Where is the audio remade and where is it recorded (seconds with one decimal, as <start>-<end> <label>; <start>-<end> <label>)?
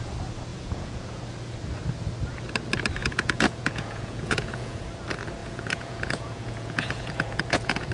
0.0-0.5 recorded; 0.5-1.2 remade; 1.2-3.0 recorded; 3.0-4.8 remade; 4.8-5.4 recorded; 5.4-7.9 remade